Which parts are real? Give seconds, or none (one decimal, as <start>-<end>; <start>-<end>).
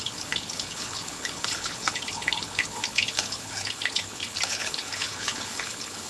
none